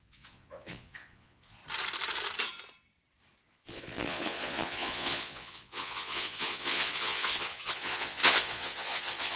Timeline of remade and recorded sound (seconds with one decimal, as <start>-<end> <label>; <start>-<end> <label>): 0.0-1.6 remade; 1.6-3.5 recorded; 3.5-9.4 remade